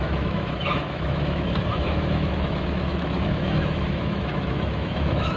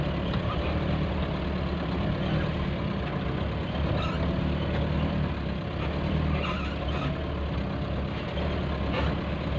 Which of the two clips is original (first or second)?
second